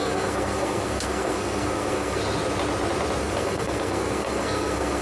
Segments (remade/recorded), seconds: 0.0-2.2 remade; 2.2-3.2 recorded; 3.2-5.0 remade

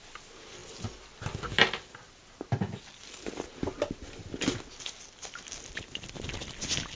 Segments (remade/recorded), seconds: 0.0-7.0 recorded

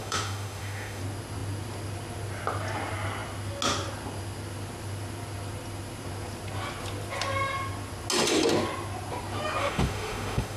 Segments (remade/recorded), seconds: 0.0-1.0 remade; 1.0-9.6 recorded; 9.6-10.6 remade

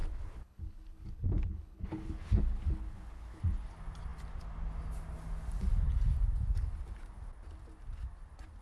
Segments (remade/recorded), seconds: 0.0-3.4 remade; 3.4-8.6 recorded